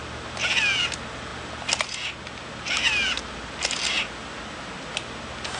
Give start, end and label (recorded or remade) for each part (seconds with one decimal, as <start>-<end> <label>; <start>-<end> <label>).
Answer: 0.0-5.6 recorded